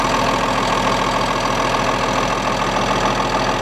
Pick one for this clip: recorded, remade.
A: recorded